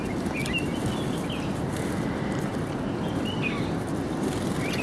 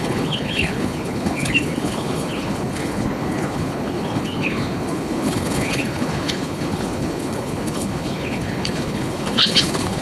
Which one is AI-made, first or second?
second